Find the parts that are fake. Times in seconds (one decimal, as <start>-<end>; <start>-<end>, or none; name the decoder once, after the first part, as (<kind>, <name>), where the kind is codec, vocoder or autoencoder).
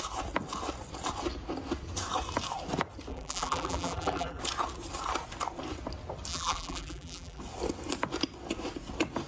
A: 3.1-4.4 (vocoder, BigVGAN v2); 6.3-7.4